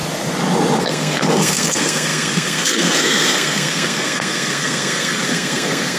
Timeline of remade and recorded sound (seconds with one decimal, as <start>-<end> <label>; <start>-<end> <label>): 0.0-0.8 recorded; 0.8-6.0 remade